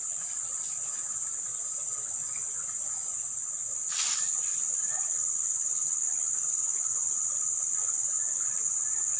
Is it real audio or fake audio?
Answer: real